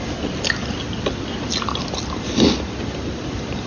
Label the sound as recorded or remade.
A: recorded